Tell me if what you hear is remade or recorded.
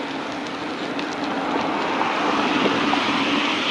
recorded